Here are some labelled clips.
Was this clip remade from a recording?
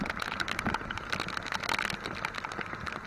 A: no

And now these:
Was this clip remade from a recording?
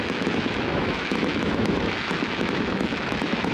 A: yes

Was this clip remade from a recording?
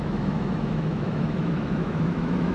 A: yes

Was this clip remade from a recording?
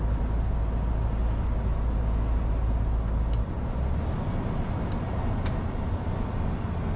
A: no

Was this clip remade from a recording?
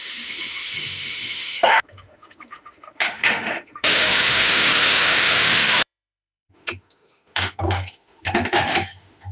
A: yes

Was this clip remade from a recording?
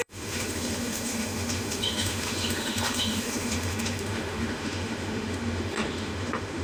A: yes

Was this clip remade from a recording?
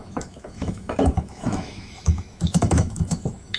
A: yes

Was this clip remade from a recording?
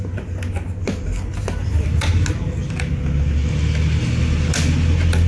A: no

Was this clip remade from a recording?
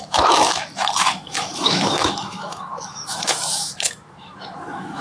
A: yes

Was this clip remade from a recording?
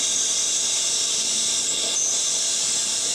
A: no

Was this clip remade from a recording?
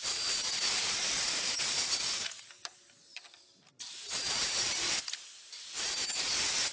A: no